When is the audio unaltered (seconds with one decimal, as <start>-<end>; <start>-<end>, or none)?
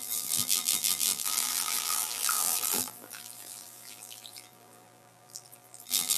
none